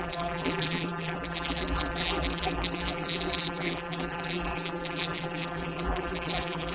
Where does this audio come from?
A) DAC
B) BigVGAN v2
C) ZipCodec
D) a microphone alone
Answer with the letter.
B